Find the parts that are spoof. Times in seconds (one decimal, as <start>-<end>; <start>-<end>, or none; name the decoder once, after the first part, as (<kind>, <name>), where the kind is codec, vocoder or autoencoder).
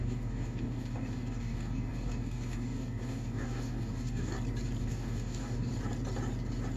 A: 0.0-4.3 (codec, DAC); 4.8-5.7